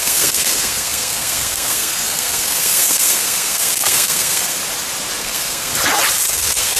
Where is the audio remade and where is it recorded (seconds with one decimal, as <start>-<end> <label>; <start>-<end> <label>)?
0.0-4.6 remade; 4.6-5.2 recorded; 5.2-5.7 remade; 5.7-6.3 recorded; 6.3-6.8 remade